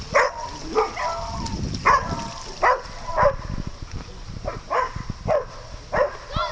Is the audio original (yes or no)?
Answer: yes